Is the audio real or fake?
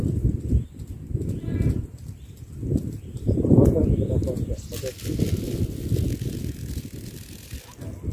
real